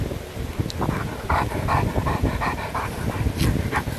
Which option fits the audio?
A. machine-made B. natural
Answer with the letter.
B